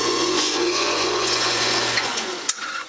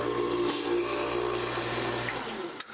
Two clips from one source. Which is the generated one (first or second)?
first